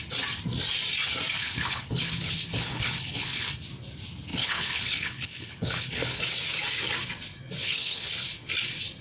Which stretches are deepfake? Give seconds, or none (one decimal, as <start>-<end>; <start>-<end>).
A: 1.4-3.5; 4.3-6.2; 7.6-8.1

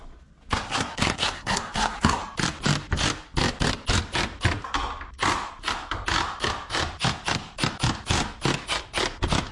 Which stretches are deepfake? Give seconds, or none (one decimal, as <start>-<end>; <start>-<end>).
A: 0.5-2.2

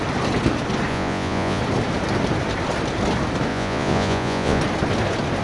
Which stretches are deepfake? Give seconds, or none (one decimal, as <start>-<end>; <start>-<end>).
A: 0.9-1.6; 3.5-4.6

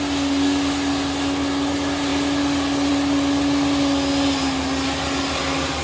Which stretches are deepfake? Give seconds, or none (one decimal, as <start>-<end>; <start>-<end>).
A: none

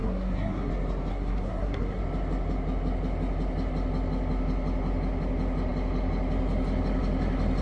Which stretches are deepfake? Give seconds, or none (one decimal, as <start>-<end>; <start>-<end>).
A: 0.0-0.7; 1.1-2.0

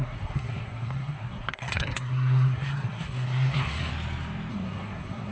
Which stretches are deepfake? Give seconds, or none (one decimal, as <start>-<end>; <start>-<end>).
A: 0.0-3.9; 4.5-5.3